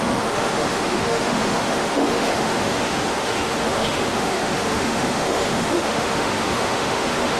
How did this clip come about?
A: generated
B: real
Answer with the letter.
A